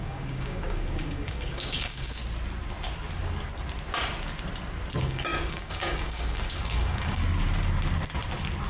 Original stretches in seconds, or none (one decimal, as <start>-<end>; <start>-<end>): 2.2-5.0; 7.2-8.7